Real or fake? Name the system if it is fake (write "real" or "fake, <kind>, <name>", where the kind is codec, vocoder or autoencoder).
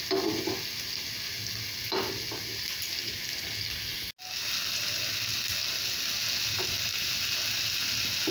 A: real